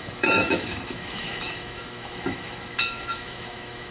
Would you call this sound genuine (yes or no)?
no